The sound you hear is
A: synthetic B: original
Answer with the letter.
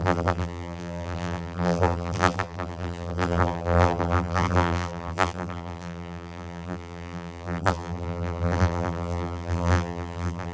A